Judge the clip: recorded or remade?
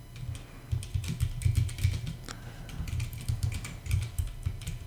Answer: recorded